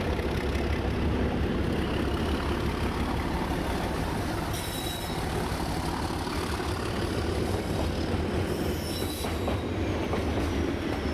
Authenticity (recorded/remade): recorded